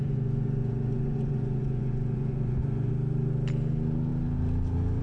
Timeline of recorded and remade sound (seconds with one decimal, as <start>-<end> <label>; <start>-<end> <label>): 0.0-2.9 remade; 2.9-5.0 recorded